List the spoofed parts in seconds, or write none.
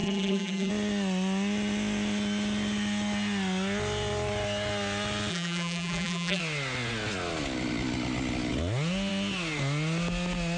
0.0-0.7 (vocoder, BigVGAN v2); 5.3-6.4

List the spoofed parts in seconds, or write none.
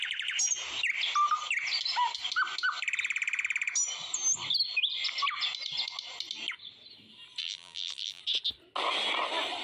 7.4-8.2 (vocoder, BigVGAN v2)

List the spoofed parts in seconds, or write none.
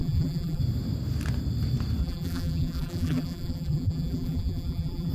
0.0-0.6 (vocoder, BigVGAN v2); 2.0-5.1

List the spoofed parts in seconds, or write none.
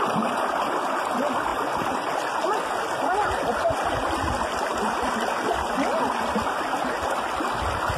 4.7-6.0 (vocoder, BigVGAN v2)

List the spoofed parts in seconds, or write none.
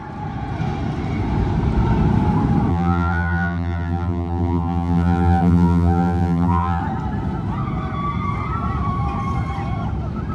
2.7-6.8 (vocoder, BigVGAN v2)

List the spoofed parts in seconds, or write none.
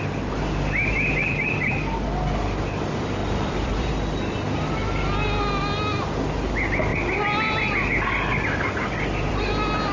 1.2-1.7 (vocoder, BigVGAN v2); 3.2-3.9